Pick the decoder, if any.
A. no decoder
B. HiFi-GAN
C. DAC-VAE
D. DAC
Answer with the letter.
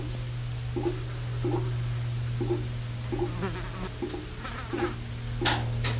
A